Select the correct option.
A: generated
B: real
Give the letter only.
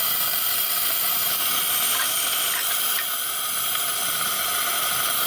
B